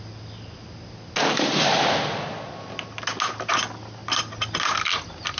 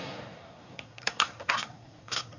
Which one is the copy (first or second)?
second